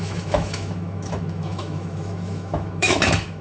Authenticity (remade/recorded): remade